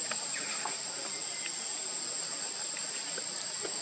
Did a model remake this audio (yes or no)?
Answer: no